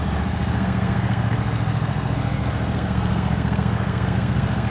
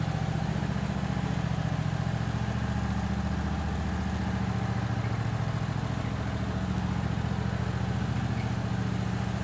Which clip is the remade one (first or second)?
first